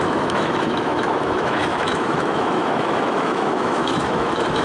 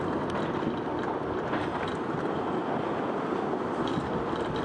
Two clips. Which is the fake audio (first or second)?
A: first